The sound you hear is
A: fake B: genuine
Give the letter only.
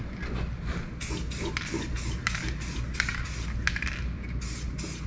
B